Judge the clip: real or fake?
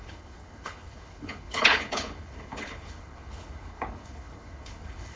fake